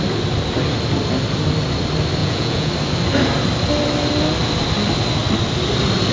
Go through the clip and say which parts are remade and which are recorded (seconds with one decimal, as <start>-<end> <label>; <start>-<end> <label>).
0.0-2.2 recorded; 2.2-2.7 remade; 2.7-6.1 recorded